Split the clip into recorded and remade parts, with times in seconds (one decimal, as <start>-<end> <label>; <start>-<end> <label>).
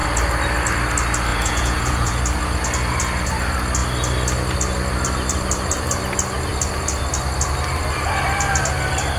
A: 0.0-1.3 recorded; 1.3-2.2 remade; 2.2-9.2 recorded